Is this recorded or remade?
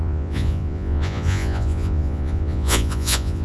remade